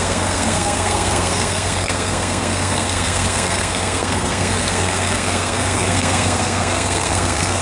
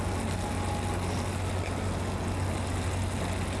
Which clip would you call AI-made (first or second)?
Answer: first